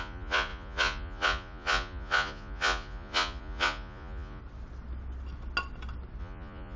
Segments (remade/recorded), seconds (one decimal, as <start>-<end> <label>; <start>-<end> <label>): 0.0-4.4 remade; 4.4-6.2 recorded; 6.2-6.8 remade